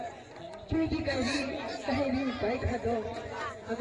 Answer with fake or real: fake